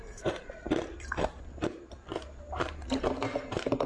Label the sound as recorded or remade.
remade